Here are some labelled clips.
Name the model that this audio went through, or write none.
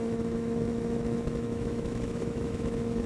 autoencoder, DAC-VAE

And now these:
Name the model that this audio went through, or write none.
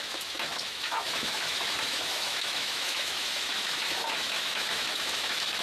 autoencoder, DAC-VAE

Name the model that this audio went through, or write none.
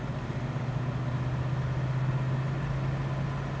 none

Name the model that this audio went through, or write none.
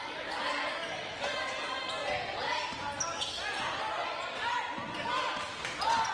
none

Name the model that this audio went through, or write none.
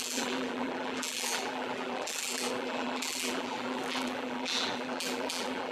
vocoder, BigVGAN v2